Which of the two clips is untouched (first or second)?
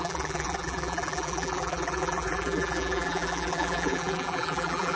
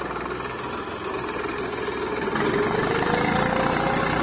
second